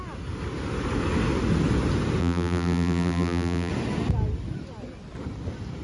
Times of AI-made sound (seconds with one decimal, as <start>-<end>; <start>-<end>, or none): 2.2-3.7